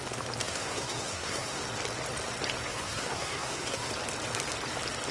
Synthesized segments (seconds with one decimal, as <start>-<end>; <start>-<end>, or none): 0.4-1.6; 2.7-3.9